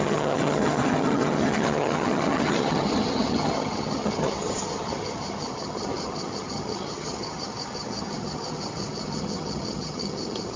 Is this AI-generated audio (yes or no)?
yes